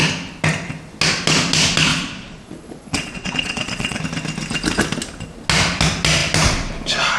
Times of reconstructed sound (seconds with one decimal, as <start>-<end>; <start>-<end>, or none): 1.9-4.0